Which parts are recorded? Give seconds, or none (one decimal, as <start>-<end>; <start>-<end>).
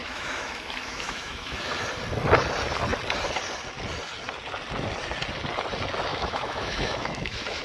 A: 1.7-6.1